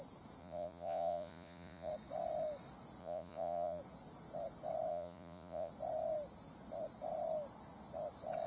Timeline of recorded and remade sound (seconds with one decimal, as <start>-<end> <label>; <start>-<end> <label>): 0.0-0.4 recorded; 0.4-1.9 remade; 1.9-3.0 recorded; 3.0-3.8 remade; 3.8-4.9 recorded; 4.9-5.7 remade; 5.7-8.5 recorded